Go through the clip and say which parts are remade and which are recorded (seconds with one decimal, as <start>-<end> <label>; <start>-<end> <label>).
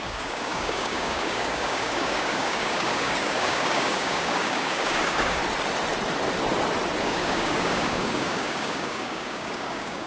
0.0-5.4 remade; 5.4-7.0 recorded; 7.0-10.1 remade